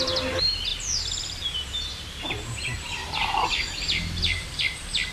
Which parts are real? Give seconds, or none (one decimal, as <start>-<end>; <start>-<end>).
0.0-0.7; 2.0-3.0; 4.6-5.1